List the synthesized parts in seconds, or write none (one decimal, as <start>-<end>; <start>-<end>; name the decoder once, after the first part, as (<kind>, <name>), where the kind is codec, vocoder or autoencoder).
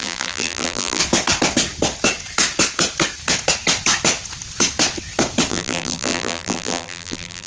0.0-1.0 (vocoder, BigVGAN v2); 5.5-7.5